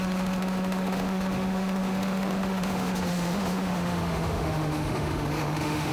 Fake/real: fake